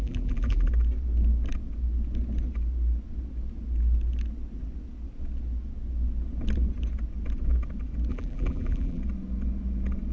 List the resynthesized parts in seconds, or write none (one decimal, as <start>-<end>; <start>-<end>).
0.0-0.7; 8.1-9.0